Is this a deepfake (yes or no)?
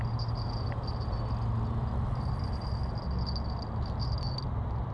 no